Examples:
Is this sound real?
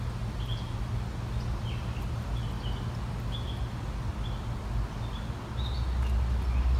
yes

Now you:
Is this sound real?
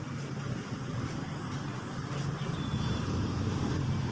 yes